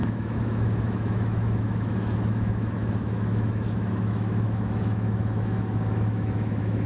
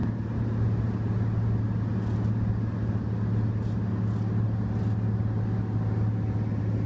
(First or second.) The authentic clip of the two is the second